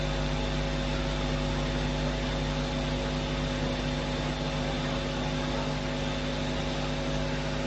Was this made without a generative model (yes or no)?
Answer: yes